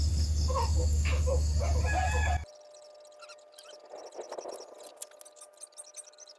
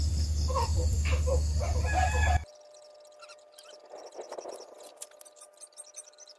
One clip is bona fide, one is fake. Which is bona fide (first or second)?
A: first